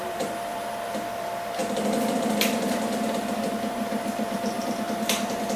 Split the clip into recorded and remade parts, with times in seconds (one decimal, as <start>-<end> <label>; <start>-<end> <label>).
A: 0.0-5.6 remade